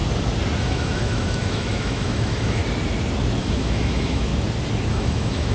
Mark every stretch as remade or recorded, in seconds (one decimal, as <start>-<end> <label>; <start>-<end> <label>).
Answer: 0.0-0.6 recorded; 0.6-2.6 remade; 2.6-3.4 recorded; 3.4-4.3 remade; 4.3-4.9 recorded; 4.9-5.5 remade